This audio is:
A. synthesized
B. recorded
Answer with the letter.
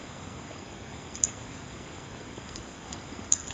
A